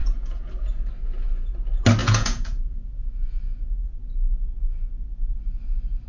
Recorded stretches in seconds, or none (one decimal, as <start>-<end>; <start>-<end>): 0.5-2.0; 3.7-6.1